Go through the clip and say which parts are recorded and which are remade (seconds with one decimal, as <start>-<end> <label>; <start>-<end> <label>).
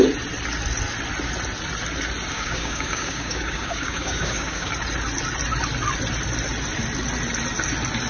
0.0-2.3 recorded; 2.3-4.7 remade; 4.7-8.1 recorded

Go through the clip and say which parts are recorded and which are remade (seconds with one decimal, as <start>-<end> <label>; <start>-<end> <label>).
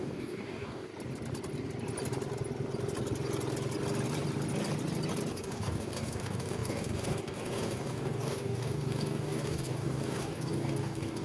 0.0-0.9 remade; 0.9-5.3 recorded; 5.3-11.2 remade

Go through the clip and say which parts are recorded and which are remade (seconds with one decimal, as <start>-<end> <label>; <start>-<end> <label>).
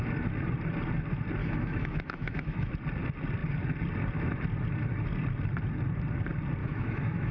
0.0-1.4 recorded; 1.4-2.7 remade; 2.7-6.6 recorded; 6.6-7.3 remade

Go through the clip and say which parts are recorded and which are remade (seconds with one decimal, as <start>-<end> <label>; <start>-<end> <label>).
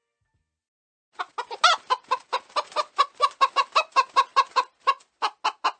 0.0-5.8 recorded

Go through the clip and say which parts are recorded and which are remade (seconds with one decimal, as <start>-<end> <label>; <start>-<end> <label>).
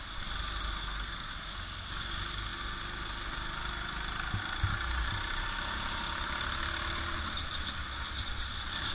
0.0-0.8 recorded; 0.8-1.3 remade; 1.3-8.9 recorded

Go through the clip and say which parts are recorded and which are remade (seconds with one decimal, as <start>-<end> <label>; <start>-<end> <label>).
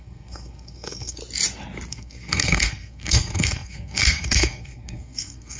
0.0-1.2 remade; 1.2-1.9 recorded; 1.9-5.6 remade